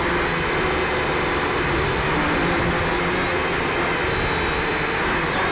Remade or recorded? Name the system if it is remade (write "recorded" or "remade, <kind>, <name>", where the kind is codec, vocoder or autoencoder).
recorded